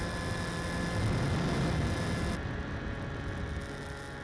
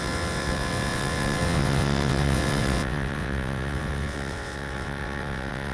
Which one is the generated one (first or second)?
second